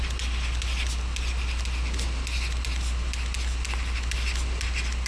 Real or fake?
real